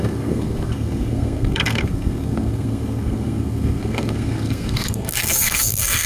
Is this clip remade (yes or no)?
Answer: yes